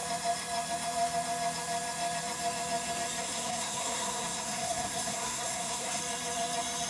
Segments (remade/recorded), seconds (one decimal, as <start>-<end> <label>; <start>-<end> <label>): 0.0-3.2 recorded; 3.2-6.0 remade; 6.0-6.9 recorded